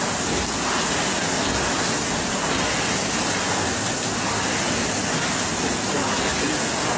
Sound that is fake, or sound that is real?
real